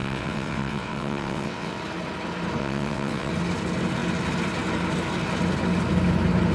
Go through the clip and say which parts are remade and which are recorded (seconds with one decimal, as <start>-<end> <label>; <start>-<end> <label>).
0.0-1.8 remade; 1.8-2.6 recorded; 2.6-3.3 remade; 3.3-6.5 recorded